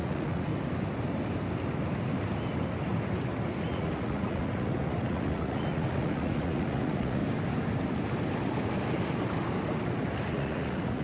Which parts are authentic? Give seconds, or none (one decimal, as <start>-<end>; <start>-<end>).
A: 0.5-3.6; 7.2-10.3

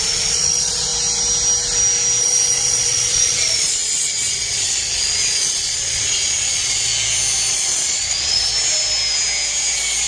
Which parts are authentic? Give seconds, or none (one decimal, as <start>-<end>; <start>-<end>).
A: 0.9-2.2; 6.9-7.5; 8.5-10.1

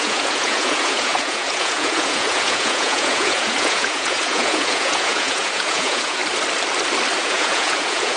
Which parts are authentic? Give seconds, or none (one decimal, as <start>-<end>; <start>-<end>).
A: 6.2-7.2

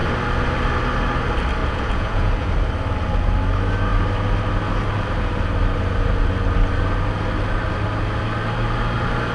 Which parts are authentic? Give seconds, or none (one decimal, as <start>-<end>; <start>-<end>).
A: 0.0-1.6; 2.5-9.3

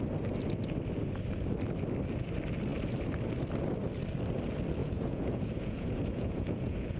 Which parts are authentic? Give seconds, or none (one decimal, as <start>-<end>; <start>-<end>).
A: 0.0-4.8